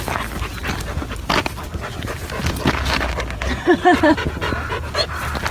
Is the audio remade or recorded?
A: recorded